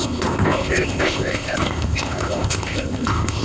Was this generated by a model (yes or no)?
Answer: yes